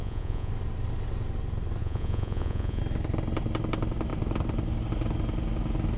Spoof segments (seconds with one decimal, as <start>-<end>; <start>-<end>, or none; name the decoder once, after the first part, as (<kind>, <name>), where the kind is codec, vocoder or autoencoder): 0.0-0.5 (vocoder, Vocos); 1.8-2.8